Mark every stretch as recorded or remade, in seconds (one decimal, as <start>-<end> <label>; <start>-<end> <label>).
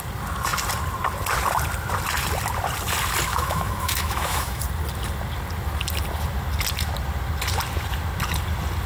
0.0-3.3 recorded; 3.3-4.6 remade; 4.6-8.9 recorded